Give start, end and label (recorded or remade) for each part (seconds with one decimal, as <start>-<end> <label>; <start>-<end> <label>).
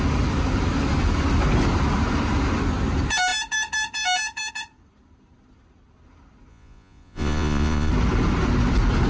0.0-6.5 recorded; 6.5-7.9 remade; 7.9-9.1 recorded